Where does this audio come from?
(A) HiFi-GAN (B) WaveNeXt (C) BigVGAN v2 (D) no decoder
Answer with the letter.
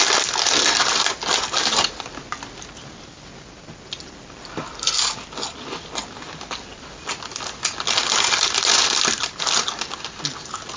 D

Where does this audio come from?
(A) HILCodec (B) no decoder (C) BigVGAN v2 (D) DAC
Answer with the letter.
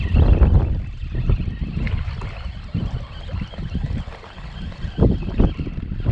B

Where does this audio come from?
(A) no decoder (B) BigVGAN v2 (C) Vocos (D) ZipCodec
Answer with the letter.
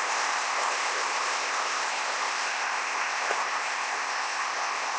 D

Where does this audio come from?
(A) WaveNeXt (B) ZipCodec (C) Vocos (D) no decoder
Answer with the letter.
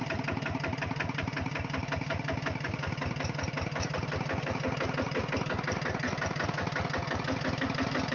D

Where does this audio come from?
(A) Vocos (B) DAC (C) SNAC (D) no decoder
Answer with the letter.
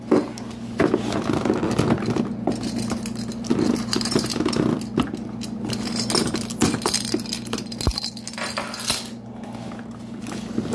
D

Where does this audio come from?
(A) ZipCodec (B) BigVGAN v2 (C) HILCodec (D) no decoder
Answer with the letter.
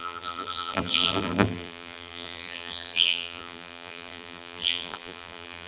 B